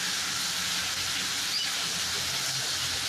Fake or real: real